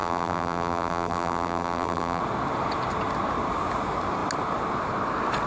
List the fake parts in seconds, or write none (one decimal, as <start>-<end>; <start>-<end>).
0.0-2.2